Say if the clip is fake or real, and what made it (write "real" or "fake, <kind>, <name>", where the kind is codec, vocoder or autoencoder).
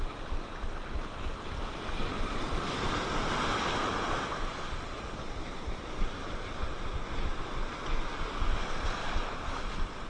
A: real